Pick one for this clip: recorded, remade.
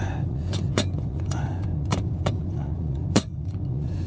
remade